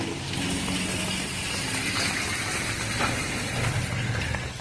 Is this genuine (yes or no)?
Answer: yes